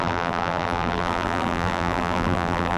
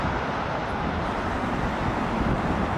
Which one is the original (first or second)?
second